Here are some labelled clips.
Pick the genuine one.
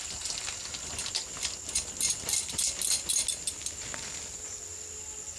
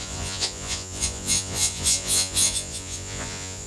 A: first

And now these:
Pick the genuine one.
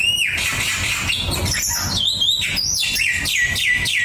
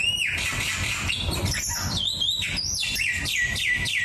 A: first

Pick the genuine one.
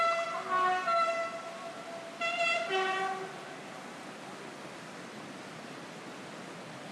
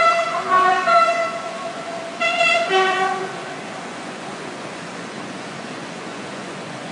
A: first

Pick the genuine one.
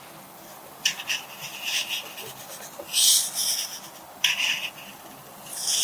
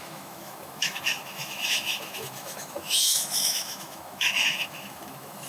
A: first